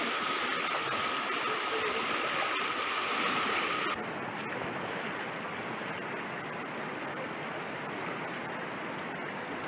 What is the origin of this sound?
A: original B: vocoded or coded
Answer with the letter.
A